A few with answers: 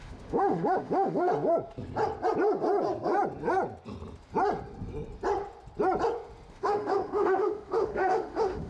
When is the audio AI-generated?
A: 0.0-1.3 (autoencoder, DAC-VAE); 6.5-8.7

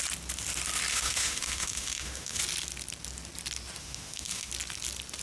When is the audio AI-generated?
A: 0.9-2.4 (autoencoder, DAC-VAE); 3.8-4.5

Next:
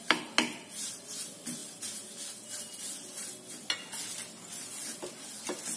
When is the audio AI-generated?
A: none